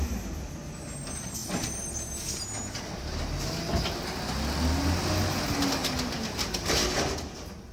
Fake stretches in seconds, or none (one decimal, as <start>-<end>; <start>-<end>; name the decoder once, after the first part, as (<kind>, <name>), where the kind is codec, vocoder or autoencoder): none